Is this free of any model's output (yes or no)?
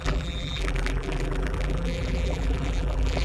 no